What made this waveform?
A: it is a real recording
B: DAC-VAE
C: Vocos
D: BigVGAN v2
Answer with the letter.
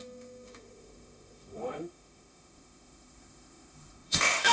B